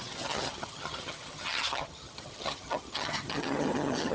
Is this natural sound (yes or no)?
no